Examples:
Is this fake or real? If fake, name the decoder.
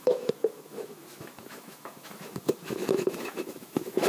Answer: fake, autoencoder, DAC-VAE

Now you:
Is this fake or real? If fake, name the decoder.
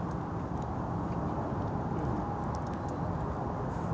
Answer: real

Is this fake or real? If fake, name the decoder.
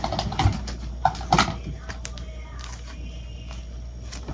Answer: real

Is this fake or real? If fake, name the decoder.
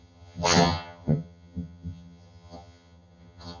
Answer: fake, vocoder, HiFi-GAN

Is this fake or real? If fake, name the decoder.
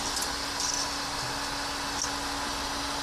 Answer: real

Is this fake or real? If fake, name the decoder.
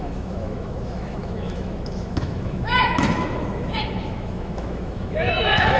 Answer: fake, autoencoder, DAC-VAE